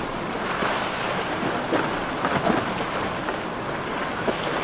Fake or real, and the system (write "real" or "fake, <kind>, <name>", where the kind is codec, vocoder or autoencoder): real